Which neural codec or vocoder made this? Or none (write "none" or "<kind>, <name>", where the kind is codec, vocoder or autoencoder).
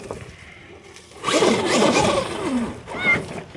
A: none